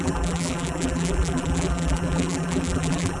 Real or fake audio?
fake